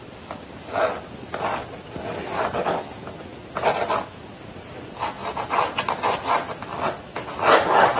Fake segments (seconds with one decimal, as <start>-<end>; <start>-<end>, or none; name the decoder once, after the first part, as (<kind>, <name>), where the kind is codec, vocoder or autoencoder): 0.0-1.5 (vocoder, BigVGAN v2); 3.9-8.0